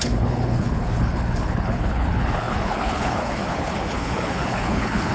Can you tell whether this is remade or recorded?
remade